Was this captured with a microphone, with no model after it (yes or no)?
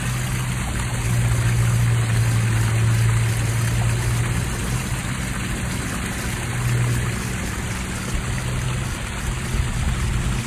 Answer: yes